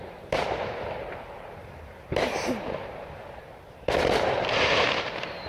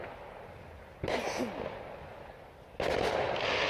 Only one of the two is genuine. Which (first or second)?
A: second